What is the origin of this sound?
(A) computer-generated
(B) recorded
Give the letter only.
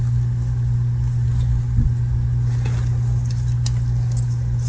B